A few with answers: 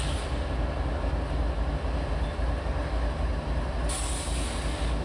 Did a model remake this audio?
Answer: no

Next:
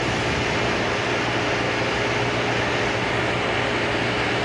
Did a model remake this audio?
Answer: no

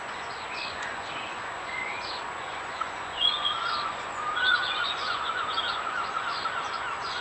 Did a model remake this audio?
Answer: yes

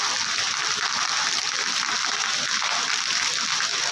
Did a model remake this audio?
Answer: no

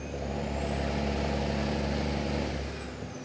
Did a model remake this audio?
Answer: no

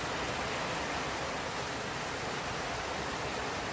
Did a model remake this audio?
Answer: no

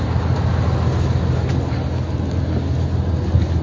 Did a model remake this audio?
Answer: no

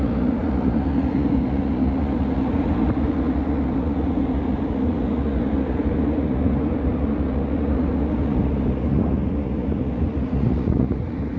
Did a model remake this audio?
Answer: yes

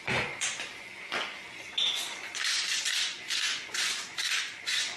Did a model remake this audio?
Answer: yes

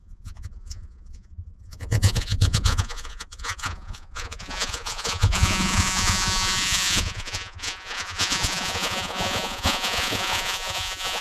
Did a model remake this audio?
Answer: yes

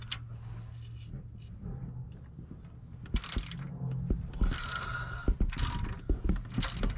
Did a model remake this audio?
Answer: no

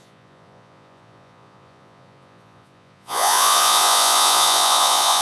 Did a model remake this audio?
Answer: yes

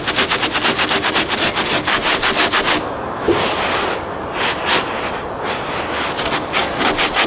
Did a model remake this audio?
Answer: no